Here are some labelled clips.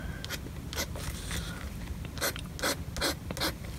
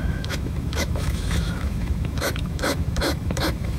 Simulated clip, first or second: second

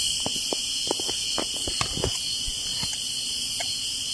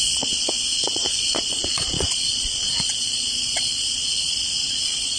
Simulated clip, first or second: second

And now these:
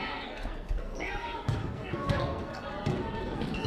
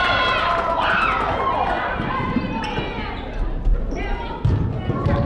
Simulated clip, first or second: first